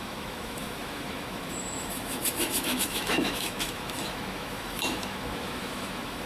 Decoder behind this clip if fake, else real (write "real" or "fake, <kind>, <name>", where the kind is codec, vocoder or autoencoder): fake, autoencoder, DAC-VAE